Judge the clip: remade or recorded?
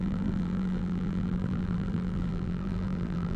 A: remade